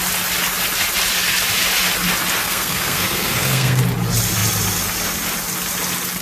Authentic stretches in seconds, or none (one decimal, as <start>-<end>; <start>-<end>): 0.0-2.4; 3.8-6.2